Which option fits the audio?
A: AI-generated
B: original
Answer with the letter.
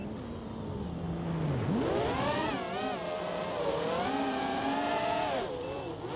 B